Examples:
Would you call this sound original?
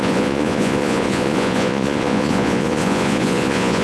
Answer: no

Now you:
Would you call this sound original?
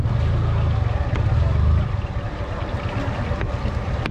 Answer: yes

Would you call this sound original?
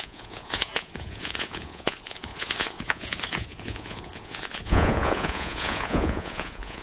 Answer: no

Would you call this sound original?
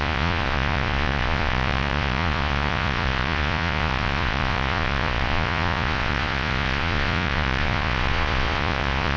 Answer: no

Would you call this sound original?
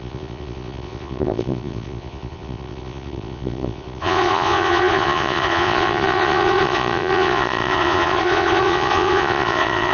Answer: no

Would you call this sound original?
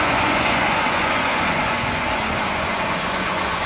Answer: no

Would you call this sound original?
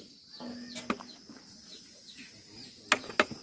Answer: yes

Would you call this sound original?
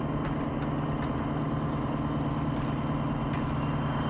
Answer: yes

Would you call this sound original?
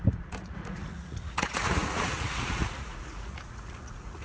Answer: no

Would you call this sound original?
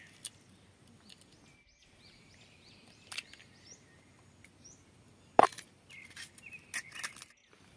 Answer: yes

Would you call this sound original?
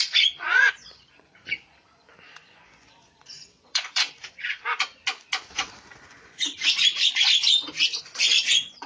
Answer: no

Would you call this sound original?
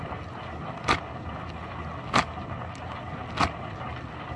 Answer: yes